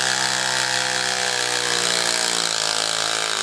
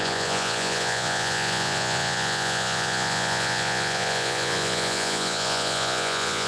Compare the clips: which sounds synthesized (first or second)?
second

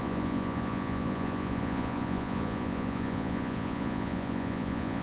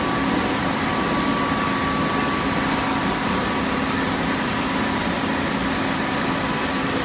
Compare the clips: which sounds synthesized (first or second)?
first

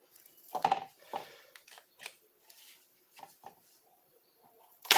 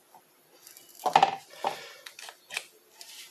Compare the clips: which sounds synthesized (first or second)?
first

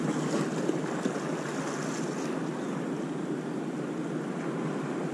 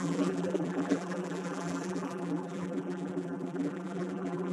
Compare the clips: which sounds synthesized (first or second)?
second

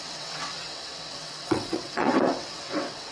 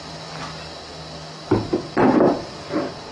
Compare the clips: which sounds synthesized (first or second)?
first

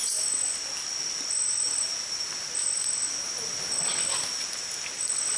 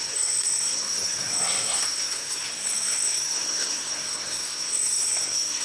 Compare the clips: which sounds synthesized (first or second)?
second